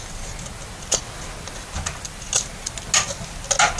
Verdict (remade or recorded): recorded